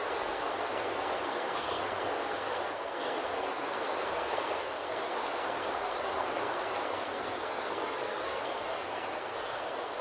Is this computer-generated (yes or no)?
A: yes